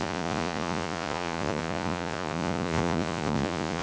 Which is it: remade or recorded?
remade